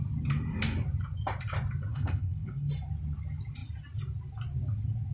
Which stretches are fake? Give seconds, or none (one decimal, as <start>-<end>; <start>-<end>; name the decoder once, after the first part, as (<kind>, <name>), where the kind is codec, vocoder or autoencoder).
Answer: 1.9-2.7 (codec, HILCodec)